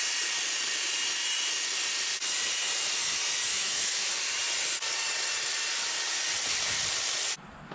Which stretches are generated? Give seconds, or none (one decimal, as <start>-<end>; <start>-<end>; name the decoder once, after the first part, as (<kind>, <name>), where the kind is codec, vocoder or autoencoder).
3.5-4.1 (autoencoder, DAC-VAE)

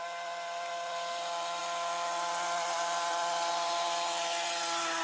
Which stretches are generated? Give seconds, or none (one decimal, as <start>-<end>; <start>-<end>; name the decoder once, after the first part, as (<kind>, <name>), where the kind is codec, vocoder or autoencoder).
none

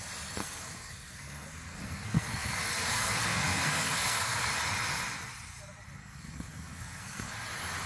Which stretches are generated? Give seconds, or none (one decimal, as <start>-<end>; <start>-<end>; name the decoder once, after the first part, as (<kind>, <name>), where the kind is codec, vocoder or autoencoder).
0.4-4.6 (codec, SNAC); 6.0-7.3